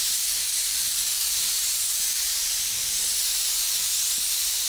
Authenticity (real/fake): fake